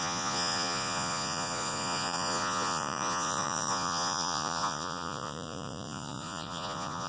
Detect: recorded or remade remade